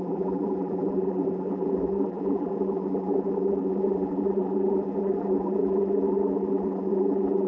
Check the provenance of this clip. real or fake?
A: fake